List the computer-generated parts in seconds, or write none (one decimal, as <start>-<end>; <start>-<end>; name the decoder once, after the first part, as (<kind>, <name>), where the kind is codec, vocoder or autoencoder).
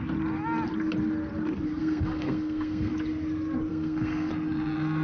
1.8-2.9 (codec, SNAC); 3.7-4.3